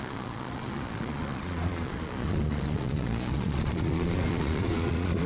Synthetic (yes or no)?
yes